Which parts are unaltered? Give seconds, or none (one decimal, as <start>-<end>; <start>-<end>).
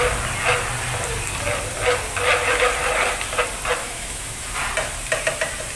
0.0-3.8; 4.5-5.8